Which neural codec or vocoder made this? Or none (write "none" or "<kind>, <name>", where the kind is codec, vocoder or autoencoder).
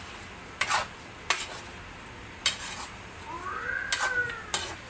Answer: none